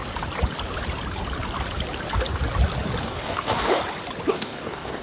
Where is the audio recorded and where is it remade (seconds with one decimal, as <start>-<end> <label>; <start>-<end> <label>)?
0.0-3.0 recorded; 3.0-3.8 remade; 3.8-4.3 recorded; 4.3-5.0 remade